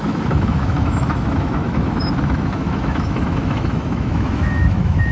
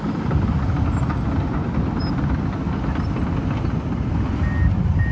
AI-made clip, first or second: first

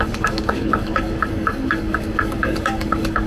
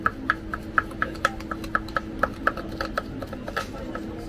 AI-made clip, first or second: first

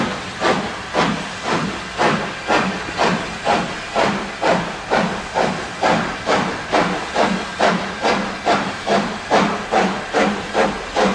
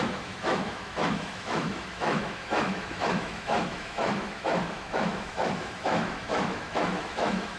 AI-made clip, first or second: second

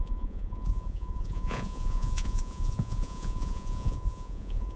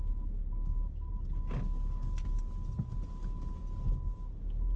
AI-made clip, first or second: first